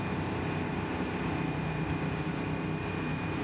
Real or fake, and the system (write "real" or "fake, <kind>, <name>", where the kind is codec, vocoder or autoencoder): fake, vocoder, BigVGAN v2